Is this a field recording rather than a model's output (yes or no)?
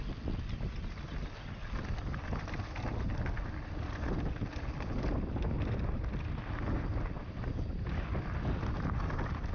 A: yes